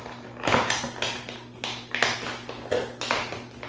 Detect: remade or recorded recorded